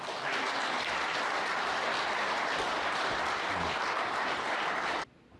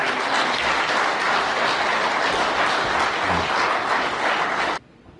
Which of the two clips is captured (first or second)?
second